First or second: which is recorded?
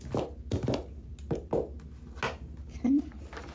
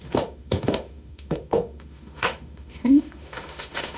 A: first